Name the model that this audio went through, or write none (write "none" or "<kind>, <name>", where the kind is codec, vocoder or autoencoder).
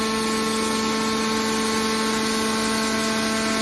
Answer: none